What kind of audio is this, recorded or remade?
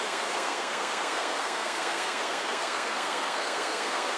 remade